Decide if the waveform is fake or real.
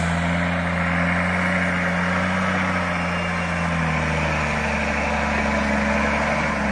real